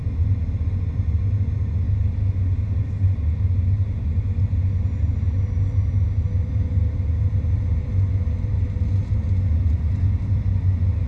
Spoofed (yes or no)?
no